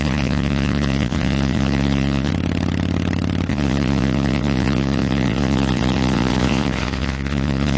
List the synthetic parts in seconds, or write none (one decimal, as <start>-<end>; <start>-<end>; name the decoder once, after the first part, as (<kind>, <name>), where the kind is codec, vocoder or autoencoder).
0.0-2.3 (vocoder, Vocos); 3.5-7.8